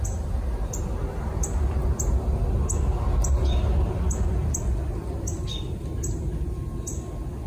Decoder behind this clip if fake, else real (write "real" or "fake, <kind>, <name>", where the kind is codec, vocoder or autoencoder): real